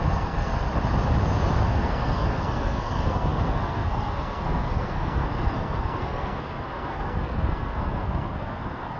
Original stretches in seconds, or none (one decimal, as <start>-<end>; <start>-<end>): 0.5-1.6